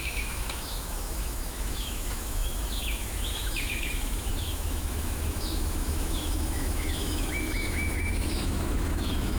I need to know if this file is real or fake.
fake